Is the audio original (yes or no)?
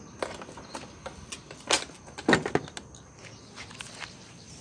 yes